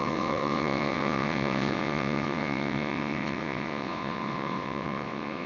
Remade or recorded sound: remade